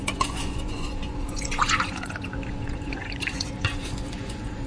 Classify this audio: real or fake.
fake